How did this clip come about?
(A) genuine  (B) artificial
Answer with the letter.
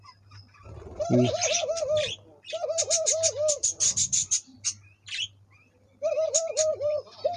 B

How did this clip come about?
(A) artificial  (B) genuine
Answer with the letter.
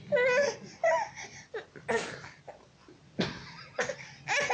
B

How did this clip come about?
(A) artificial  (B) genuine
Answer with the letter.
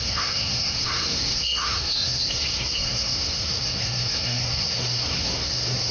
A